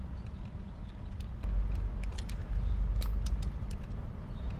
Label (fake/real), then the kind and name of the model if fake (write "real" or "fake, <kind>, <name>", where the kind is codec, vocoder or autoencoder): real